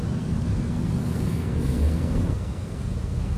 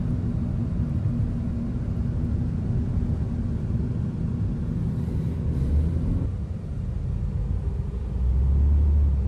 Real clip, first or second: second